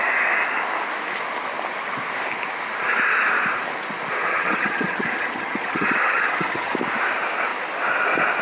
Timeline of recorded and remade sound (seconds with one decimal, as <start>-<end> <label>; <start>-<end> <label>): 0.0-4.3 recorded; 4.3-6.7 remade; 6.7-8.4 recorded